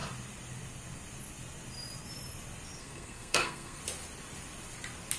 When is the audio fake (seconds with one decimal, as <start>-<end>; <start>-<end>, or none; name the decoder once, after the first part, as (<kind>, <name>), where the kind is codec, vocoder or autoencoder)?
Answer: 2.8-3.8 (codec, SNAC)